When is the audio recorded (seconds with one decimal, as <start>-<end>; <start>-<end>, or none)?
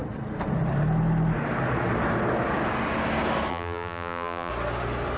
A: 0.0-3.5; 4.5-5.2